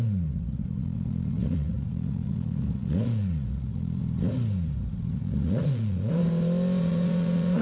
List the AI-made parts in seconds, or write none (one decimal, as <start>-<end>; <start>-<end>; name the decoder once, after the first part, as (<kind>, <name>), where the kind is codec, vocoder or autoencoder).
0.0-4.0 (vocoder, Vocos); 5.1-6.2; 6.8-7.6